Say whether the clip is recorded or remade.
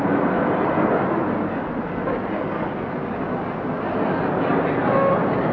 recorded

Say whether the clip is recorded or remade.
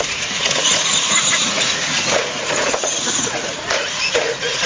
remade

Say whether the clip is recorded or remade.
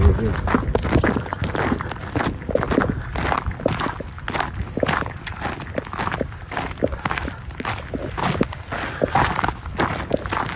recorded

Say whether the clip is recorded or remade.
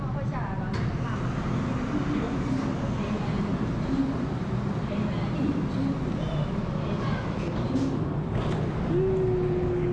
recorded